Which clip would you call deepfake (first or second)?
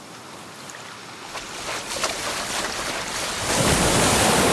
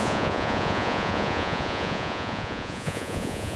second